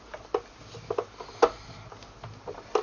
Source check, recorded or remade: recorded